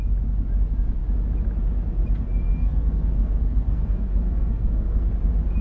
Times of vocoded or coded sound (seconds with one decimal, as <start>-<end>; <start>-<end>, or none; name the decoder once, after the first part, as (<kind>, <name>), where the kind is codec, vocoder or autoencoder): 2.6-5.1 (codec, SNAC)